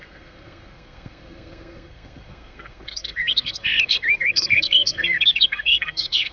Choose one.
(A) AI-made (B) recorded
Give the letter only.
A